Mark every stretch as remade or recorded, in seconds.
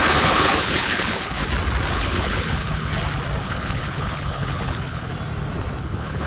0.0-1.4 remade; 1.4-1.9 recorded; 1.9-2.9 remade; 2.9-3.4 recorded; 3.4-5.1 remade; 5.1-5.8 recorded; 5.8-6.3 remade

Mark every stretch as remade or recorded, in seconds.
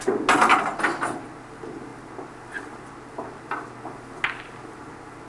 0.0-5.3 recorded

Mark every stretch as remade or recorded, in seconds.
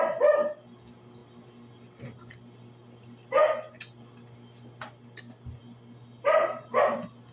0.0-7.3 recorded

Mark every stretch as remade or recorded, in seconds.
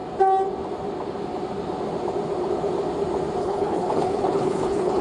0.0-3.4 recorded; 3.4-5.0 remade